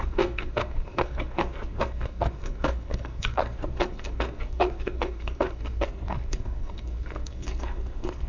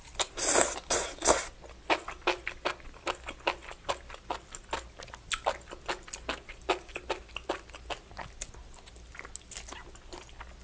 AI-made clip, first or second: first